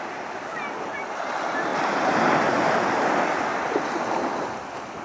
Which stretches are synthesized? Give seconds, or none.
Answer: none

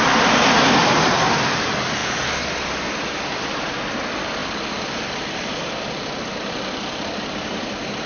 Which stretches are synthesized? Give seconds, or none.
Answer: 0.0-8.1 (vocoder, BigVGAN v2)

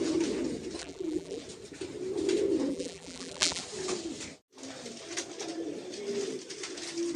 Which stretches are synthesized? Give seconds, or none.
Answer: 0.8-1.4 (vocoder, BigVGAN v2); 2.7-3.6

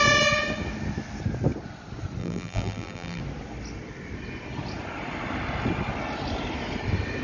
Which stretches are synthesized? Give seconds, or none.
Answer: 2.2-3.2 (vocoder, BigVGAN v2)

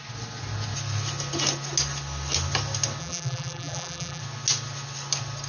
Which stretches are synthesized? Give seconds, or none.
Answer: 3.0-4.2 (vocoder, BigVGAN v2)